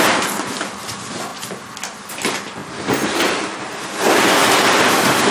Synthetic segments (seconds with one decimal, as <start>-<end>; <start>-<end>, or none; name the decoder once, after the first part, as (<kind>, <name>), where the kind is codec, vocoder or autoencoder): none